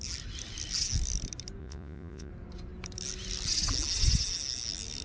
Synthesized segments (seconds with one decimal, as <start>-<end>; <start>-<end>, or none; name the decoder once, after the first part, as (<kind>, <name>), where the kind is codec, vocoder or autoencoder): 1.6-2.3 (vocoder, Vocos)